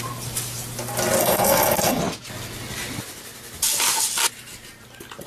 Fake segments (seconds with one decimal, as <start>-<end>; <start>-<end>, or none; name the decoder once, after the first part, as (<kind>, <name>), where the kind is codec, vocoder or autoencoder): 1.2-2.0 (codec, SNAC)